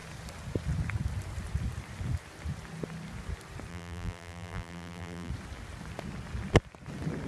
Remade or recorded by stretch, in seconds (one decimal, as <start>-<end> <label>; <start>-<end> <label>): 0.0-3.7 recorded; 3.7-5.3 remade; 5.3-7.3 recorded